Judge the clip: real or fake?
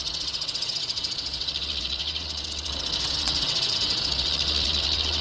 fake